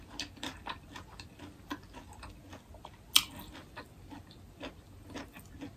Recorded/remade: recorded